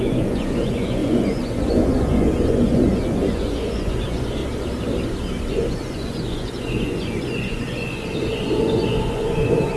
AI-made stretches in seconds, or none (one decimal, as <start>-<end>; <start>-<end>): 0.0-4.4; 5.5-9.8